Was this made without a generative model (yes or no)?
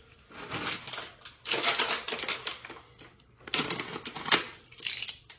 yes